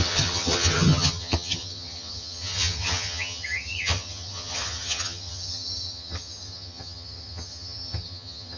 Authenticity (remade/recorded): remade